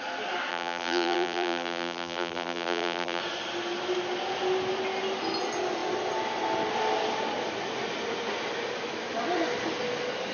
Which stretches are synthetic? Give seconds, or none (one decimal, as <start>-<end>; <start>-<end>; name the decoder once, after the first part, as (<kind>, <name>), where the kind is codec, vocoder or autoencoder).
0.5-3.2 (vocoder, BigVGAN v2)